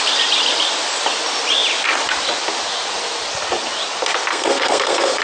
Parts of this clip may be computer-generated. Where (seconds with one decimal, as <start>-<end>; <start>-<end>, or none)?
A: 4.3-5.2